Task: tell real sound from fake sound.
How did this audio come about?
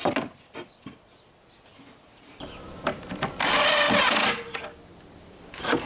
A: real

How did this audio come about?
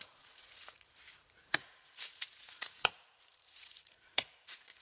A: fake